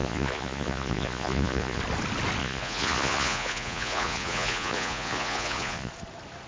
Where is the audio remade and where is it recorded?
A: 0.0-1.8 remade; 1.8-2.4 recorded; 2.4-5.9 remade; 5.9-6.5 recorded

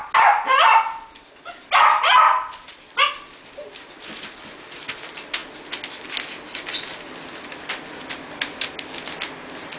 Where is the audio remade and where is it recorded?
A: 0.0-9.8 recorded